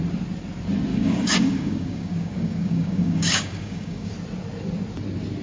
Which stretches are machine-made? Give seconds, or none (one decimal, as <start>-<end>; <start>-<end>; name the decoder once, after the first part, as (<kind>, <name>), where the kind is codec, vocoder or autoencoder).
0.9-4.1 (codec, DAC)